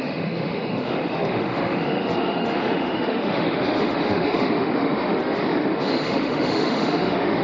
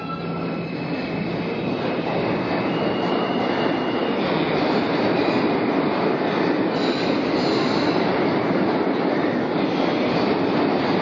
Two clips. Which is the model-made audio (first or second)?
first